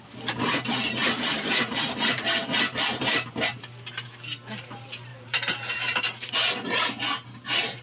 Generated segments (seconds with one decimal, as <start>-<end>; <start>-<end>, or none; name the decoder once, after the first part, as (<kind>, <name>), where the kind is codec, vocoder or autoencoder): 1.0-2.4 (vocoder, BigVGAN v2); 5.1-6.3

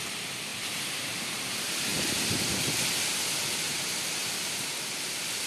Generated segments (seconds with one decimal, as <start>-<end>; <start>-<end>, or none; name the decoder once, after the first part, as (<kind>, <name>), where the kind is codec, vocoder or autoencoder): none

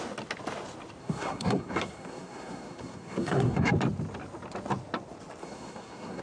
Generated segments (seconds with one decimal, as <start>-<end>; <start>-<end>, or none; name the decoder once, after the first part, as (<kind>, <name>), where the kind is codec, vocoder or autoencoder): 1.0-3.7 (codec, SNAC); 5.4-6.2

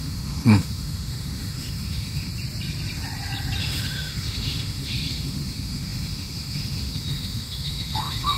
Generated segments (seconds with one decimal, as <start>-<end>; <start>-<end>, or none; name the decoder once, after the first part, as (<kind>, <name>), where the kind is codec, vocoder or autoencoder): 0.0-2.3 (autoencoder, DAC-VAE); 3.6-8.4